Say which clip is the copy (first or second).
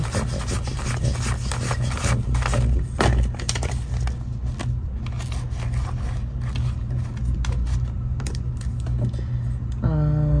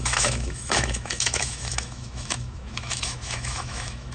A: second